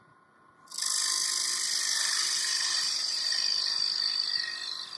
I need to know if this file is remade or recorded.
recorded